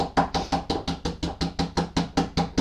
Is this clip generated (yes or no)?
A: no